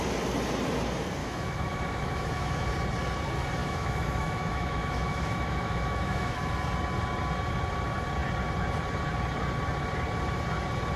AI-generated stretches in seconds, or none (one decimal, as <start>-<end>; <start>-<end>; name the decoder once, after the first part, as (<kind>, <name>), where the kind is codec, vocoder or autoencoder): 1.2-2.7 (autoencoder, DAC-VAE); 3.6-6.5